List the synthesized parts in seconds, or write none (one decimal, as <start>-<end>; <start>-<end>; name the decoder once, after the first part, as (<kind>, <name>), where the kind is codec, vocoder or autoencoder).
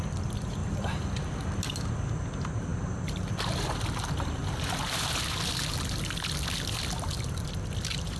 none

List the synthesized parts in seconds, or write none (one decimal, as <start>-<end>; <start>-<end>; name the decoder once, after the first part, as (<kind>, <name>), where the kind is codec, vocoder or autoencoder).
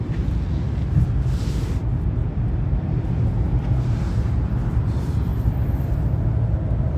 none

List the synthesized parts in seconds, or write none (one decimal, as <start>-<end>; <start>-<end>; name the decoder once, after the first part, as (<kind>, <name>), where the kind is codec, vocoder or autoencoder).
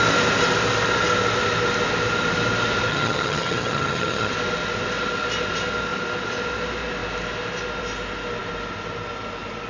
2.9-4.3 (vocoder, HiFi-GAN)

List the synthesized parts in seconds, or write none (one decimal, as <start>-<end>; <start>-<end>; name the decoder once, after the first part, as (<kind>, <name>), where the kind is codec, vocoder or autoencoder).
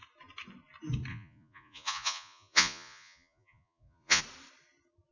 1.1-4.2 (vocoder, Vocos)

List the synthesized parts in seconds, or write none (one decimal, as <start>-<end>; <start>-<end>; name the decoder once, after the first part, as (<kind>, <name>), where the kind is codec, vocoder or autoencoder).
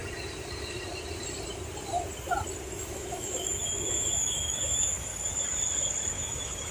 2.8-5.1 (autoencoder, DAC-VAE); 6.1-6.7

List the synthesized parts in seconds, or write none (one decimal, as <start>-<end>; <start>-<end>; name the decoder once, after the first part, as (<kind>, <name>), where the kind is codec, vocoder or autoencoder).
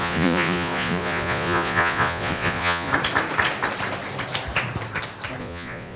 0.0-2.9 (vocoder, Vocos); 5.4-6.0